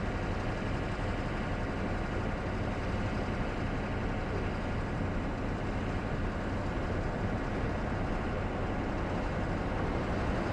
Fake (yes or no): no